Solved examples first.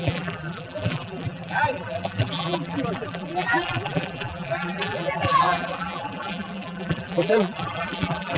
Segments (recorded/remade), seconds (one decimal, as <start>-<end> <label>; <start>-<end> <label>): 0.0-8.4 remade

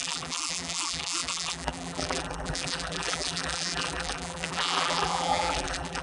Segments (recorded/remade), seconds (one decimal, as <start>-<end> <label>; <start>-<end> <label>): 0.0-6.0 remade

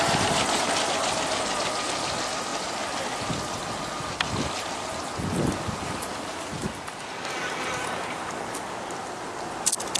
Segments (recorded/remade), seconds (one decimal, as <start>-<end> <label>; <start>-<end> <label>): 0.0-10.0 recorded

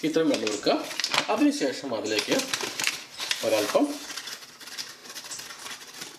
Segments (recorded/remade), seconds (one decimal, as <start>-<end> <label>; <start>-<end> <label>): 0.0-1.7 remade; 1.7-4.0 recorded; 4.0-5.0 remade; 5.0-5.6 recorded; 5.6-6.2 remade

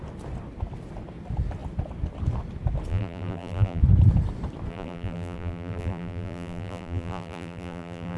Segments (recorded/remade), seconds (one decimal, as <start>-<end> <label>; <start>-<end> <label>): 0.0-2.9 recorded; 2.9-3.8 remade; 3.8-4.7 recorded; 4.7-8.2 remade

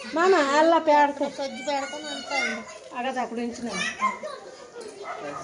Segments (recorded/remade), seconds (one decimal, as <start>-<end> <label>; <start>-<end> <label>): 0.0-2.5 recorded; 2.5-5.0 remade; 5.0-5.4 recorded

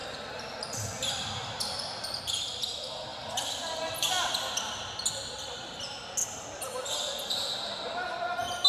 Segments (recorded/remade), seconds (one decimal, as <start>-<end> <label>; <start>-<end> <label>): 0.0-2.2 remade; 2.2-3.1 recorded; 3.1-4.5 remade; 4.5-6.2 recorded; 6.2-6.9 remade; 6.9-8.7 recorded

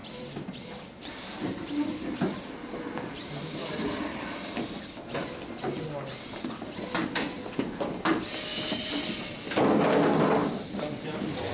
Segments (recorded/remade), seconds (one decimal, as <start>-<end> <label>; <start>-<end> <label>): 0.0-4.9 remade; 4.9-10.4 recorded; 10.4-11.5 remade